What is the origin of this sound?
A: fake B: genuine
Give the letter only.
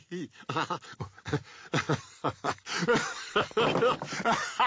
B